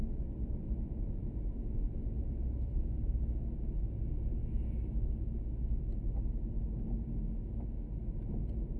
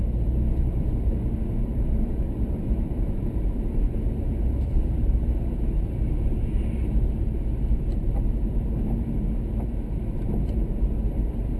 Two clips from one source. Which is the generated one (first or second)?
second